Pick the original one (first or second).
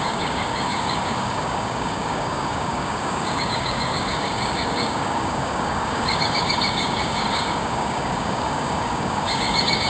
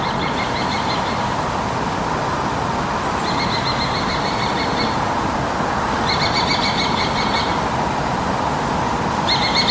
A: second